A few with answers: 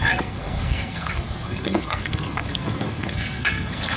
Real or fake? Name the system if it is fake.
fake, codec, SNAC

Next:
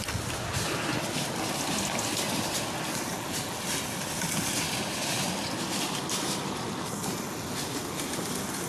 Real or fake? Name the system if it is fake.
real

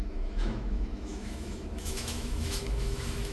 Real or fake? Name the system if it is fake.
fake, autoencoder, DAC-VAE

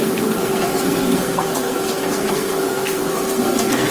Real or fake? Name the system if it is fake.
fake, codec, SNAC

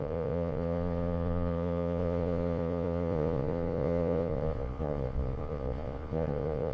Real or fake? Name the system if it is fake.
fake, vocoder, Vocos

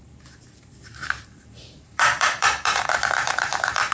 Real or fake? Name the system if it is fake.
fake, vocoder, BigVGAN v2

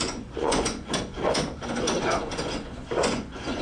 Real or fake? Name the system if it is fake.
fake, vocoder, Vocos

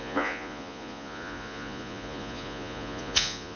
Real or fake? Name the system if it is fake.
fake, vocoder, Vocos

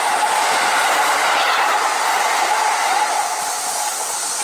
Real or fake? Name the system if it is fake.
real